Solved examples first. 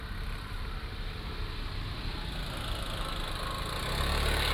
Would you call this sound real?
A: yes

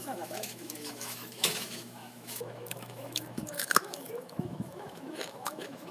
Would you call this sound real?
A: no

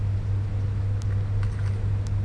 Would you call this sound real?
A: yes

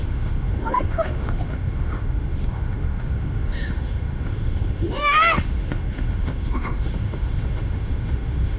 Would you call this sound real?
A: no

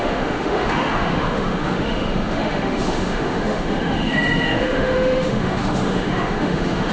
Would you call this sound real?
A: no